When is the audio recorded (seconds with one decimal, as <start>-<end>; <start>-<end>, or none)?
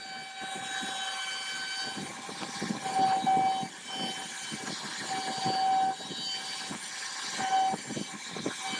0.0-8.8